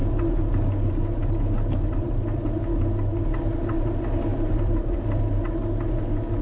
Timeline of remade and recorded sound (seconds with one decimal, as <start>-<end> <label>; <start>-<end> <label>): 0.0-4.3 recorded; 4.3-5.3 remade; 5.3-6.4 recorded